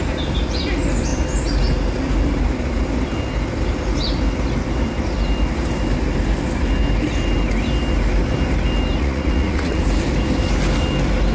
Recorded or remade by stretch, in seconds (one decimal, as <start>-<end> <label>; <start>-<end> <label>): 0.0-9.0 recorded; 9.0-9.8 remade; 9.8-11.3 recorded